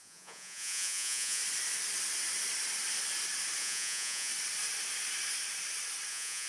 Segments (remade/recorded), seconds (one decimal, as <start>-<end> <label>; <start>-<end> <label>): 0.0-1.4 remade; 1.4-3.6 recorded; 3.6-4.3 remade; 4.3-6.1 recorded; 6.1-6.5 remade